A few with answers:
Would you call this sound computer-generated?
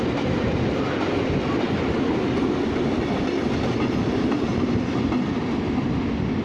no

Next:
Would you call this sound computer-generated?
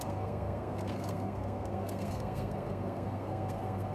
yes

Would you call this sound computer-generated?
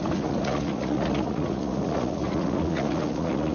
yes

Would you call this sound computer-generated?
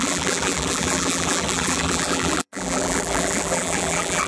yes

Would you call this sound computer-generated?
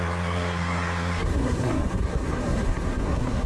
yes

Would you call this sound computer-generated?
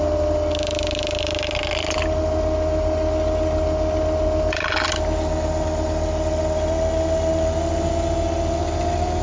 no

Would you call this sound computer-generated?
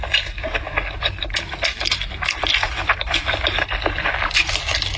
no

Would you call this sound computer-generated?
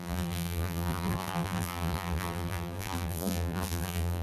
yes